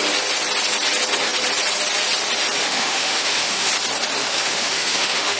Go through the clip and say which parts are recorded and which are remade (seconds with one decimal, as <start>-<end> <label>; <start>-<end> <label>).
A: 0.0-2.6 recorded; 2.6-3.7 remade; 3.7-4.2 recorded; 4.2-5.4 remade